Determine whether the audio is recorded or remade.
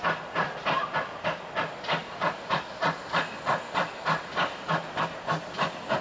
recorded